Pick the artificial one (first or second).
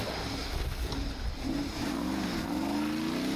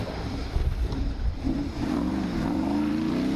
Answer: second